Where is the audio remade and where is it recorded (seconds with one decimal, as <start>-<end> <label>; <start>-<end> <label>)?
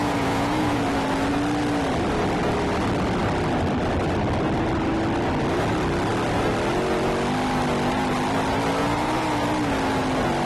0.0-0.8 remade; 0.8-10.4 recorded